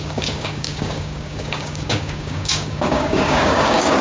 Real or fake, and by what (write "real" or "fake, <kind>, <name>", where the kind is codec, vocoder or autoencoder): fake, codec, DAC